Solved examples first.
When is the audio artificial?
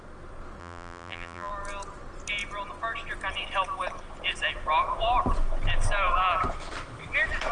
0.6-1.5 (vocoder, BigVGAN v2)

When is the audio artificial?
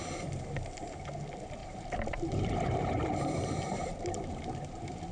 1.6-5.1 (vocoder, BigVGAN v2)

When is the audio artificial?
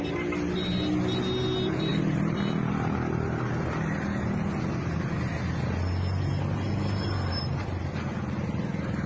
1.9-2.7 (vocoder, BigVGAN v2)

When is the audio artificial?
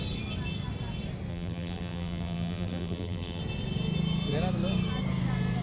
1.3-3.4 (vocoder, BigVGAN v2)